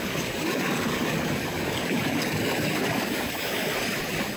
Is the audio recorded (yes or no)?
no